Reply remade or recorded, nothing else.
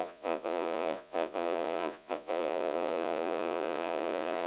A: remade